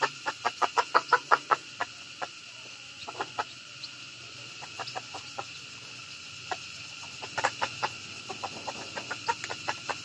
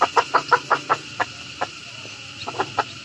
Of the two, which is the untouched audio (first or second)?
second